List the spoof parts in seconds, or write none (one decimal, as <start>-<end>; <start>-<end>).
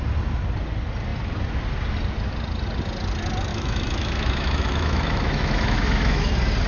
3.5-6.3